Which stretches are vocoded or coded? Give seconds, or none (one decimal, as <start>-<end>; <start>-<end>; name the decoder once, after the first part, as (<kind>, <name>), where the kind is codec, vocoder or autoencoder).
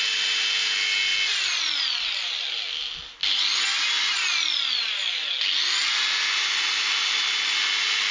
none